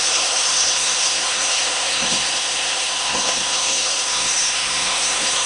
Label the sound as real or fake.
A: fake